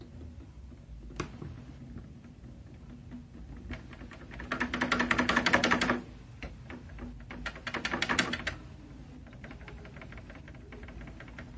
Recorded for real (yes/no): yes